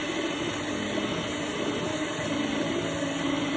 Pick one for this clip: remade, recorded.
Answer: recorded